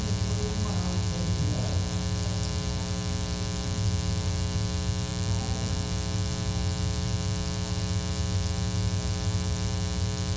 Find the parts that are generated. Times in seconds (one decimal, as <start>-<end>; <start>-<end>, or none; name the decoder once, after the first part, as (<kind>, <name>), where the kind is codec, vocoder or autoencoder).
none